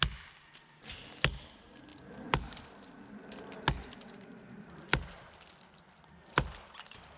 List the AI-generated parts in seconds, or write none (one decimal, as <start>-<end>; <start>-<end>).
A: none